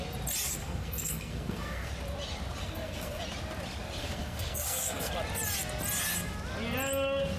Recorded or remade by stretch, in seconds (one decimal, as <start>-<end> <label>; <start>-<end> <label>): 0.0-0.6 recorded; 0.6-1.9 remade; 1.9-2.6 recorded; 2.6-3.2 remade; 3.2-4.0 recorded; 4.0-5.1 remade; 5.1-7.4 recorded